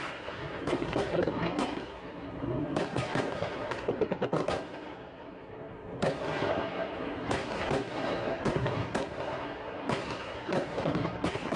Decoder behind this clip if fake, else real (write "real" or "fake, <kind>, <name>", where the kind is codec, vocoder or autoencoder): fake, codec, SNAC